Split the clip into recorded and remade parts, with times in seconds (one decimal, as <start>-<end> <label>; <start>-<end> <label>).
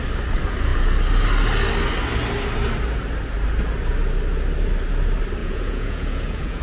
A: 0.0-5.4 recorded; 5.4-6.6 remade